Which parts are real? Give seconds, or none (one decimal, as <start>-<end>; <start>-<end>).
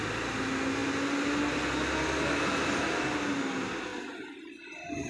0.0-3.9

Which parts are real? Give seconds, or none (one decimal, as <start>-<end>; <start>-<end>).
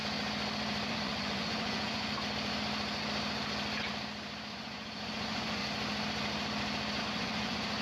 0.0-0.9; 2.1-4.5; 5.6-7.0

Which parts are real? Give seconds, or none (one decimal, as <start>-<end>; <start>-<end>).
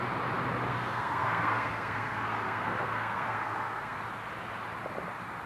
0.0-0.7; 4.0-5.5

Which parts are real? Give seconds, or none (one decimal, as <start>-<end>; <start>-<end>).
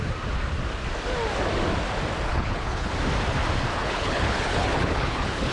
0.0-2.3; 2.9-3.7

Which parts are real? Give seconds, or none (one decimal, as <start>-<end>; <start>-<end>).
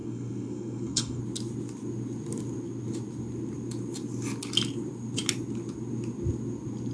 1.2-6.9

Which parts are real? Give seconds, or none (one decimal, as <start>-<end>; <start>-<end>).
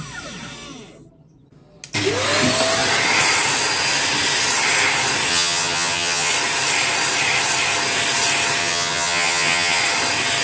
0.0-5.3; 6.3-8.6; 9.8-10.4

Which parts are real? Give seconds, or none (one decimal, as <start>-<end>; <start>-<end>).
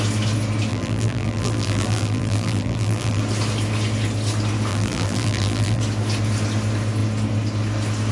0.0-0.7; 3.2-4.7; 5.8-8.1